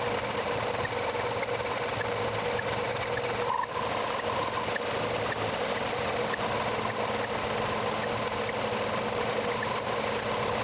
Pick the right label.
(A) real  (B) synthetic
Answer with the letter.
A